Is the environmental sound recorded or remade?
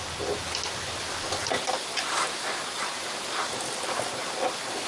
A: recorded